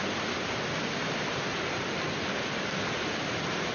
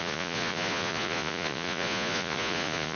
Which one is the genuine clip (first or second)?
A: first